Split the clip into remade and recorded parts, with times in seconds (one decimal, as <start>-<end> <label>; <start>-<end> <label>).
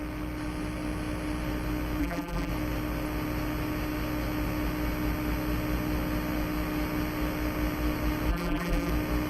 0.0-2.0 recorded; 2.0-2.5 remade; 2.5-8.3 recorded; 8.3-8.9 remade; 8.9-9.3 recorded